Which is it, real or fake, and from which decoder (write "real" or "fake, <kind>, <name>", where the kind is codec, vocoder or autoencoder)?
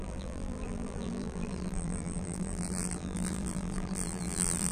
fake, vocoder, BigVGAN v2